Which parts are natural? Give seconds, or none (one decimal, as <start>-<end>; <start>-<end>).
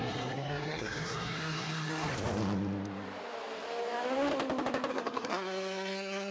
2.1-4.9